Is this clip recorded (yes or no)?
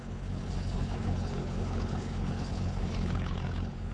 no